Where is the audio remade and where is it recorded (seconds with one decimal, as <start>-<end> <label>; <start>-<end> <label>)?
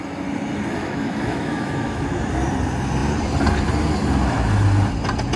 0.0-0.8 recorded; 0.8-2.2 remade; 2.2-5.4 recorded